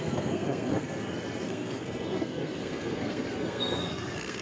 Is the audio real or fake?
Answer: fake